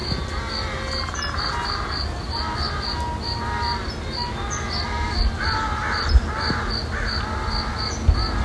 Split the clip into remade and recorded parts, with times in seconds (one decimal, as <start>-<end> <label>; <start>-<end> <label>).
0.0-8.4 recorded